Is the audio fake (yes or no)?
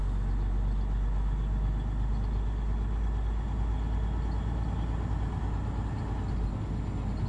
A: no